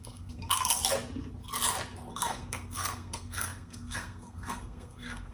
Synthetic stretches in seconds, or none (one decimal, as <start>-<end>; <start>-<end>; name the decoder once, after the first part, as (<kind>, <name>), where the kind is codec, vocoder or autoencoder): 0.0-0.8 (codec, SNAC); 2.1-5.3

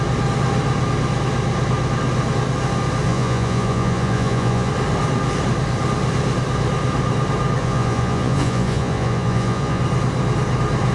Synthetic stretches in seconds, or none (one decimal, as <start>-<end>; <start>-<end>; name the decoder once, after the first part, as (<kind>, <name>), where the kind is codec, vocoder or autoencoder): 3.1-4.7 (vocoder, Vocos); 7.6-9.8

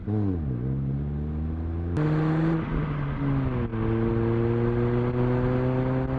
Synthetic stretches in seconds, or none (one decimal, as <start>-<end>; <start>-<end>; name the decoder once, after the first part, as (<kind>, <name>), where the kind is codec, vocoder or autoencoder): none

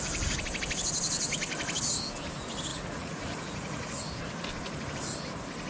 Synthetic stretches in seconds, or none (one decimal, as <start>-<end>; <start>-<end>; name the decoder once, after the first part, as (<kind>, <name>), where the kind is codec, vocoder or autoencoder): 2.7-3.9 (vocoder, Vocos)

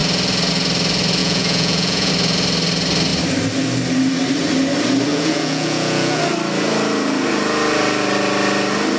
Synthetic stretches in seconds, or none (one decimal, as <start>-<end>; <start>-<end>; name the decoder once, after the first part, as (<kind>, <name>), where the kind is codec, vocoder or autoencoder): 1.2-2.1 (vocoder, Vocos); 5.1-6.2

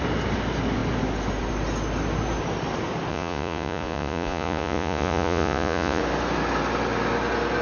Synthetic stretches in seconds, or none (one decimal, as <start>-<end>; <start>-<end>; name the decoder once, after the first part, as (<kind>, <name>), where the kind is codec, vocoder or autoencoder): 3.1-6.0 (vocoder, Vocos)

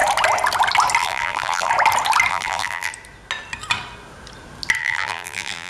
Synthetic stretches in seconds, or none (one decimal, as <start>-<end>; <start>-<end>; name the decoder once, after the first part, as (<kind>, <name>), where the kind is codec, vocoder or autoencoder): 1.0-1.7 (vocoder, BigVGAN v2); 2.3-2.9; 4.8-5.7

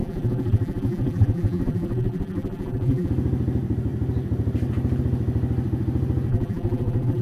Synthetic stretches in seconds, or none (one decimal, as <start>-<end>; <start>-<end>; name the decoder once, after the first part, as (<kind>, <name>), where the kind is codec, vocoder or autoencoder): 0.0-3.1 (vocoder, BigVGAN v2); 6.3-7.2